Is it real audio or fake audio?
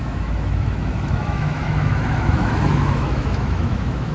fake